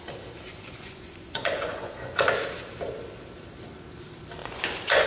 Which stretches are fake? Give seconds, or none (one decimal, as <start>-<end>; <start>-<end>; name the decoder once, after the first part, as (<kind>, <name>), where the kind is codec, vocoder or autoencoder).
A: 0.5-2.3 (vocoder, Vocos); 4.4-5.1